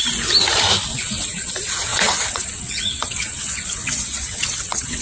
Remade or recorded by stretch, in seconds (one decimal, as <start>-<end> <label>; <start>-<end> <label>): 0.0-0.9 recorded; 0.9-1.5 remade; 1.5-1.9 recorded; 1.9-5.0 remade